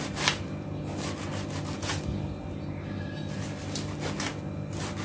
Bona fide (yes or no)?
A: yes